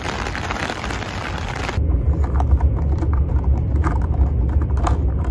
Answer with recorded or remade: recorded